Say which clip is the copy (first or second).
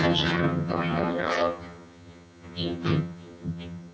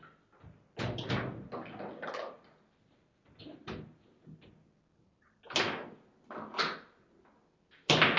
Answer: first